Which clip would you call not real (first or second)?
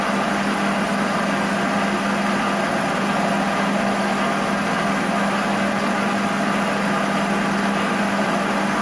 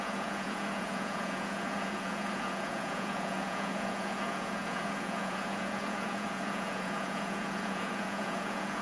second